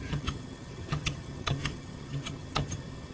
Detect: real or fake fake